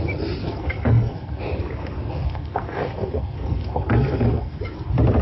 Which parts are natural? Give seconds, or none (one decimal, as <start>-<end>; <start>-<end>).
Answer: 0.0-0.4; 1.4-1.8; 4.6-5.2